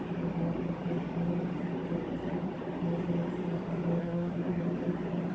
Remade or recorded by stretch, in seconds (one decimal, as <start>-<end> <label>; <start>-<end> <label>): 0.0-4.0 recorded; 4.0-4.6 remade; 4.6-5.3 recorded